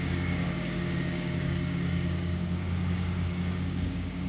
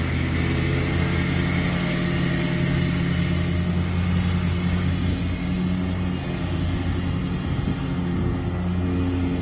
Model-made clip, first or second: first